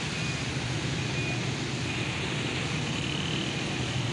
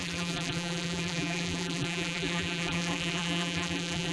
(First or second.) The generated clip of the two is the second